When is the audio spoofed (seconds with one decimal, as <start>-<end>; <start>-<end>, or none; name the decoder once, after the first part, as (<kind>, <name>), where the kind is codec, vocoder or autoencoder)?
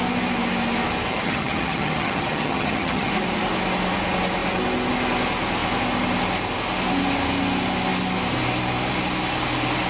1.1-3.1 (vocoder, HiFi-GAN)